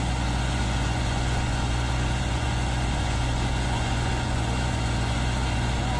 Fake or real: fake